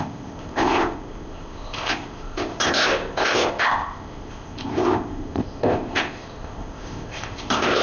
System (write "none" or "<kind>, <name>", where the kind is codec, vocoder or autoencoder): codec, ZipCodec